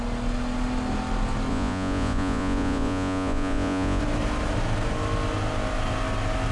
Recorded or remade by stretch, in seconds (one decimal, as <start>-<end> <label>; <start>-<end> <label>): 0.0-1.5 recorded; 1.5-4.0 remade; 4.0-6.5 recorded